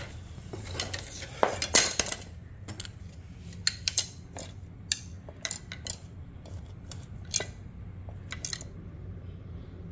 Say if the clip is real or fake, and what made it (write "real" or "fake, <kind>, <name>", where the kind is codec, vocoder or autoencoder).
real